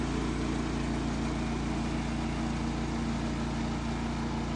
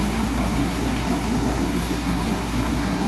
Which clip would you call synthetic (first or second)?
second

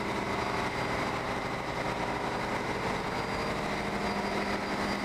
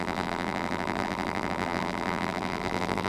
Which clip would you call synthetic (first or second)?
second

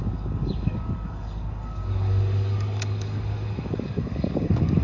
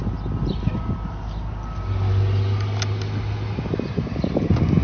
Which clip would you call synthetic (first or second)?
first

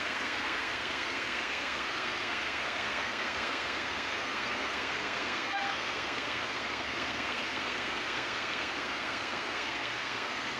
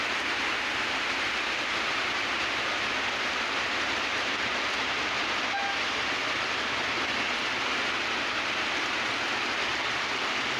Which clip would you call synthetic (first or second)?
first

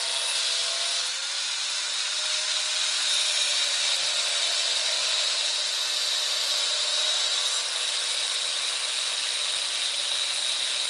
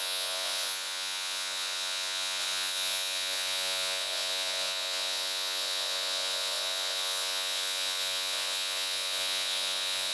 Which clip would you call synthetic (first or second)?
second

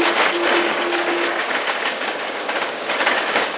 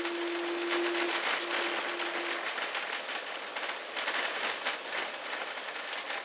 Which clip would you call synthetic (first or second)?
first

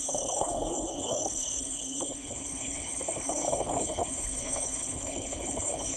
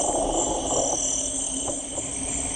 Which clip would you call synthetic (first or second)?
first